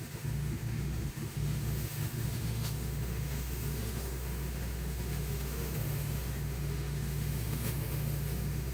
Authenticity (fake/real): fake